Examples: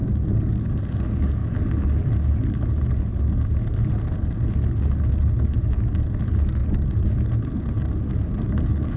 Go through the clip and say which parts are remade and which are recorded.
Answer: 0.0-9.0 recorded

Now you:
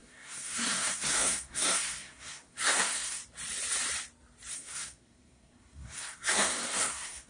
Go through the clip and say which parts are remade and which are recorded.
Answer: 0.0-3.2 remade; 3.2-4.5 recorded; 4.5-7.3 remade

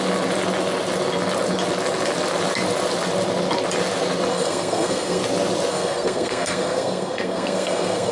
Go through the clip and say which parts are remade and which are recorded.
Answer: 0.0-4.3 recorded; 4.3-5.2 remade; 5.2-5.7 recorded; 5.7-8.1 remade

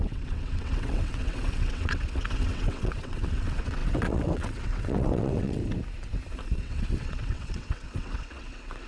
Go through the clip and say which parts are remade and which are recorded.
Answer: 0.0-5.6 remade; 5.6-6.6 recorded; 6.6-8.9 remade

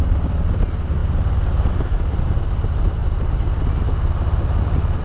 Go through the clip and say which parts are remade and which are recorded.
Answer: 0.0-5.0 recorded

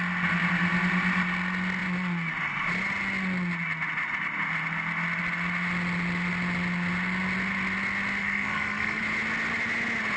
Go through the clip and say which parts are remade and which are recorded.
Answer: 0.0-8.2 recorded; 8.2-9.0 remade; 9.0-10.2 recorded

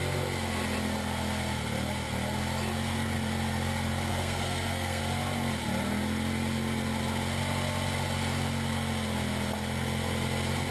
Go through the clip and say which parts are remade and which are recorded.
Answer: 0.0-4.1 recorded; 4.1-5.0 remade; 5.0-10.7 recorded